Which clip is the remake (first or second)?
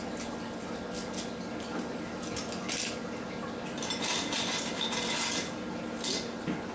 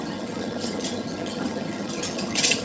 second